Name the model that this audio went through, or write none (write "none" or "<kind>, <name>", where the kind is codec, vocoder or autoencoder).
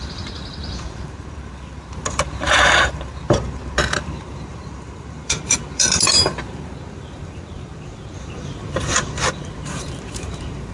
vocoder, BigVGAN v2